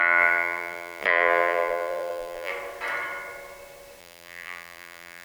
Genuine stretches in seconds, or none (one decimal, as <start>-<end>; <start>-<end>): 2.5-4.0